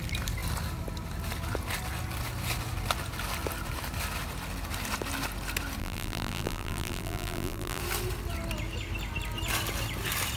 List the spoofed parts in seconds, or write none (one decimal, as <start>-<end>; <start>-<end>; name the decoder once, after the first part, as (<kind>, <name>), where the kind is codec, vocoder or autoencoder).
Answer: 5.8-7.8 (vocoder, BigVGAN v2)